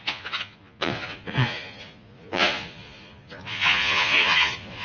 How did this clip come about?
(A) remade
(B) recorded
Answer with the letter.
A